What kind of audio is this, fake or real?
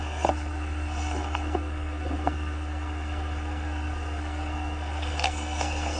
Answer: fake